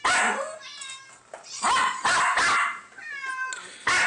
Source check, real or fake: real